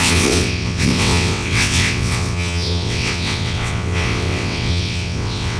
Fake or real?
fake